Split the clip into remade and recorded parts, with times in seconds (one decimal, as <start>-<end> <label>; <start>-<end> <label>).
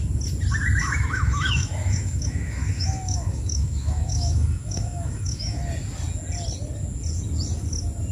0.0-0.8 recorded; 0.8-5.6 remade; 5.6-8.1 recorded